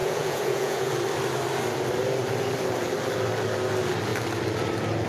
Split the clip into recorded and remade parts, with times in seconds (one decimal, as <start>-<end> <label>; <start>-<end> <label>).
0.0-0.9 remade; 0.9-5.1 recorded